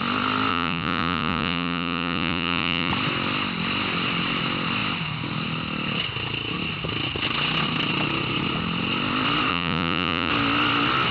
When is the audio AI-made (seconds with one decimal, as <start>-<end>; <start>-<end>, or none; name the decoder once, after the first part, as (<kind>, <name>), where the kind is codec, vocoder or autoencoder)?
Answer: 0.5-2.9 (vocoder, Vocos); 9.5-10.3

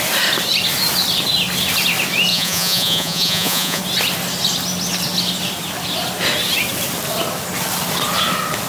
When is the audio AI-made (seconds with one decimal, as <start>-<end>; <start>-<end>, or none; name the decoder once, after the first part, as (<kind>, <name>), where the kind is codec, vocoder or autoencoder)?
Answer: 2.3-3.8 (vocoder, Vocos)

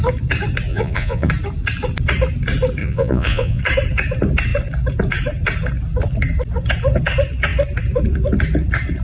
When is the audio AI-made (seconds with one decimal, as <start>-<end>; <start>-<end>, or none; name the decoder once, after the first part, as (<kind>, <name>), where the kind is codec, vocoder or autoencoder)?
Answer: 0.7-1.3 (vocoder, Vocos); 2.8-3.6

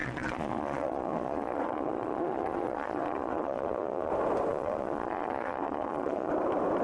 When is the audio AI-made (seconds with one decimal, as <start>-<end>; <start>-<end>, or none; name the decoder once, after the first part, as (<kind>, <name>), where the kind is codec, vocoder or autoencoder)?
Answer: 0.0-4.1 (vocoder, Vocos); 4.5-6.3

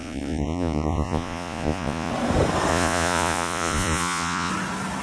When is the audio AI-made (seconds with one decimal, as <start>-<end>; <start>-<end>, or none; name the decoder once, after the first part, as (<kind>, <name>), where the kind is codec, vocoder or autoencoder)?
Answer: 0.0-2.1 (vocoder, Vocos); 2.7-4.5

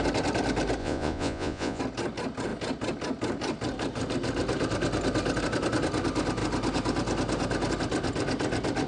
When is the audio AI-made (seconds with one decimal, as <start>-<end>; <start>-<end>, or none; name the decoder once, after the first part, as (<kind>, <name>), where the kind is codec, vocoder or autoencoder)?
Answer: 0.8-1.8 (vocoder, Vocos)

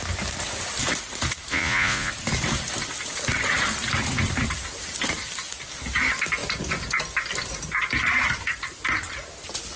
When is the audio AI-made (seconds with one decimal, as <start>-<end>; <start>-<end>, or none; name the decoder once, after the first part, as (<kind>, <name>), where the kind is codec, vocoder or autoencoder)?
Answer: 1.5-2.1 (vocoder, Vocos)